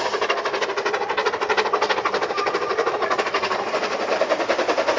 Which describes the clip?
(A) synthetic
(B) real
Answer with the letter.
B